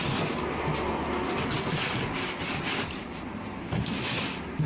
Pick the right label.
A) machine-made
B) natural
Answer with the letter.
B